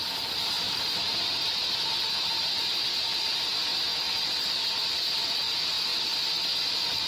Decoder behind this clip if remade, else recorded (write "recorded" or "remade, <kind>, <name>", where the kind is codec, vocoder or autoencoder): recorded